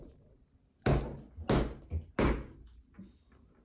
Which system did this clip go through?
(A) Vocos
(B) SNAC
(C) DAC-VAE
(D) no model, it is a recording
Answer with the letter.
D